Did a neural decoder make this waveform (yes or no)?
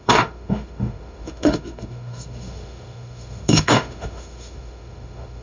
yes